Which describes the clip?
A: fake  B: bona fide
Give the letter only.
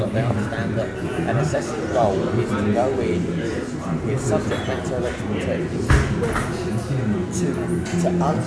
B